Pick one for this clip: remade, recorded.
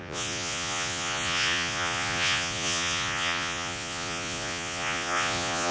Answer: remade